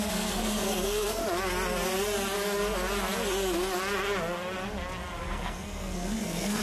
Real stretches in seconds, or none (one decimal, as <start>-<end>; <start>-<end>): 1.2-5.2